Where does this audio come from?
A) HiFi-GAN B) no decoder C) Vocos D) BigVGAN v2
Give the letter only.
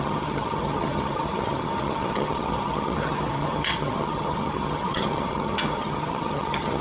A